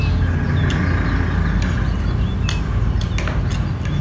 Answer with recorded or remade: recorded